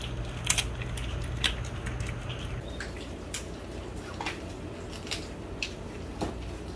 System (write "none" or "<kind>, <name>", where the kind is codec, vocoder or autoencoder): none